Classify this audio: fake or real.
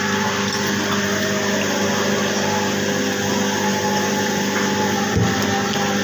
real